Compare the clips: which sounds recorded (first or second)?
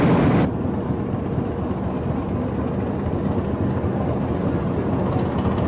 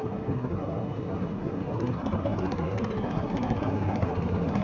first